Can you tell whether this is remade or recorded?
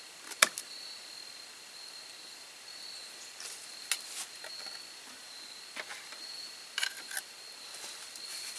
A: recorded